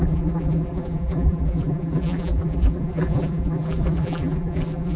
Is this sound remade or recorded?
remade